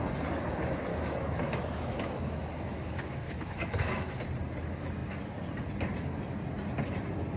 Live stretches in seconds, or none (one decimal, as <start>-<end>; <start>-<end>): 0.0-0.9; 4.2-7.4